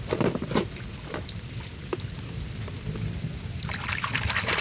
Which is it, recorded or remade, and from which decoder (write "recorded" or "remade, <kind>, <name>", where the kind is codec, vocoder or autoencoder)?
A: remade, vocoder, BigVGAN v2